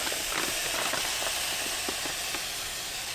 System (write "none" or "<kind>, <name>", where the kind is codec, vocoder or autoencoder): none